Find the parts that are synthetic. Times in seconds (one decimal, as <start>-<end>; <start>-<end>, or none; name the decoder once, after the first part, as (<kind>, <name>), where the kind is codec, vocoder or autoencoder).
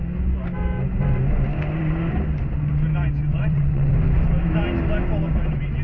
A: 3.3-3.9 (vocoder, WaveNeXt)